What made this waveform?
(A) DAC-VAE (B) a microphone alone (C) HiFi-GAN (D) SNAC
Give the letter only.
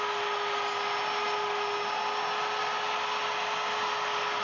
B